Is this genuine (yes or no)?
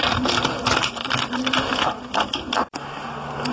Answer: no